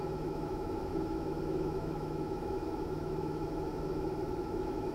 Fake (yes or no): yes